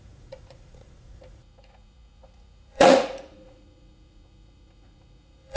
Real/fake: fake